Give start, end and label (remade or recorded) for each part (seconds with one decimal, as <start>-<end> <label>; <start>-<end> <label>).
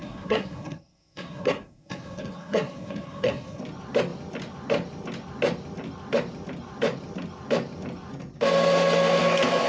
0.0-3.6 remade; 3.6-9.7 recorded